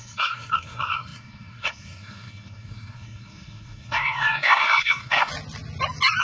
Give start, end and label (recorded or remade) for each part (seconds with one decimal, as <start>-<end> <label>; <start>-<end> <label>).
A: 0.0-5.3 remade; 5.3-6.2 recorded